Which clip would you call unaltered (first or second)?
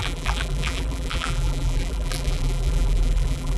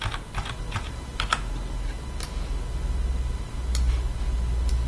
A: second